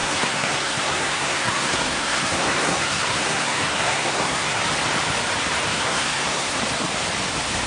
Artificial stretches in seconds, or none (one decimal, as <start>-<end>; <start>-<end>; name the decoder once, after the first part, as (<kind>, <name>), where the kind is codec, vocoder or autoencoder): 0.0-4.6 (codec, SNAC); 5.7-6.6